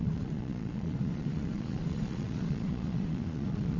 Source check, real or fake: fake